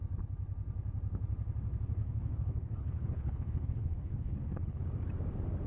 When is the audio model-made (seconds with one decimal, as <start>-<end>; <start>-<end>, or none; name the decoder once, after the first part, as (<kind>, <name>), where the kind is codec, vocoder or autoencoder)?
2.0-4.8 (codec, HILCodec)